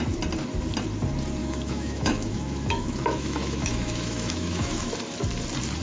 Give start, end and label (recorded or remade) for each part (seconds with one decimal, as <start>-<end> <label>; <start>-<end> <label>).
0.0-1.4 recorded; 1.4-4.9 remade; 4.9-5.8 recorded